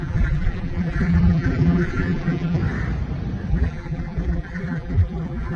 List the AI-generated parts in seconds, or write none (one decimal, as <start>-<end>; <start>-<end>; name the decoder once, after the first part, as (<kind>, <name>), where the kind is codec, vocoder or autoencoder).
0.0-2.6 (vocoder, BigVGAN v2); 3.5-5.6